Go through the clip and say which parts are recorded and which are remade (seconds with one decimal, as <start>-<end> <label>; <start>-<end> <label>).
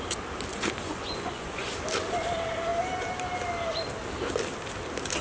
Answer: 0.0-0.5 recorded; 0.5-1.7 remade; 1.7-5.2 recorded